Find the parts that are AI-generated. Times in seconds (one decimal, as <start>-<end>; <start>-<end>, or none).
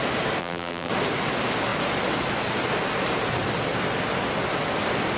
0.4-0.9